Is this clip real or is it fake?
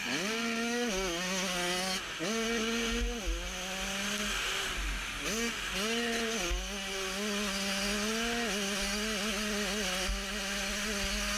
real